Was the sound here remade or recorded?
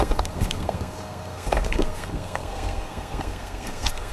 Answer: remade